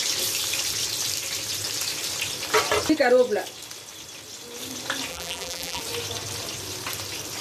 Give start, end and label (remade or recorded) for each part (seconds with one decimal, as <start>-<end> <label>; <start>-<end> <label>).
0.0-5.1 recorded; 5.1-5.8 remade; 5.8-7.4 recorded